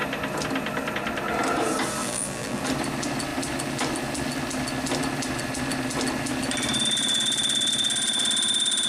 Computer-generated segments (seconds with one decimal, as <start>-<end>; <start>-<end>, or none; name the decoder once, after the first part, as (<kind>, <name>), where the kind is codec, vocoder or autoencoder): 2.0-2.6 (vocoder, BigVGAN v2)